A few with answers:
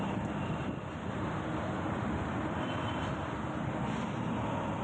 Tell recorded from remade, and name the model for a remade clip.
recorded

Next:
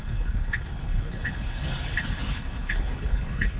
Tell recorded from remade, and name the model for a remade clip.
remade, codec, HILCodec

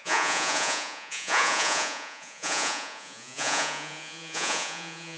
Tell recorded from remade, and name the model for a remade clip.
remade, vocoder, Vocos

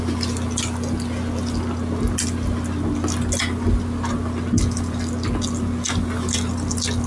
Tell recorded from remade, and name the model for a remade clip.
recorded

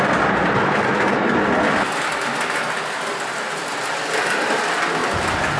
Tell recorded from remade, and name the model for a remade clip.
recorded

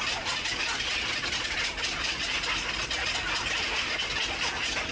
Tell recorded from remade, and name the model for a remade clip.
recorded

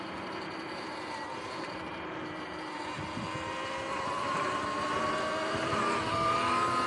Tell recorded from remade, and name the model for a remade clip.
recorded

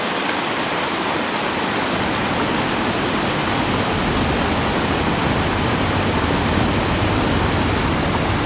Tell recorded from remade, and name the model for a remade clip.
recorded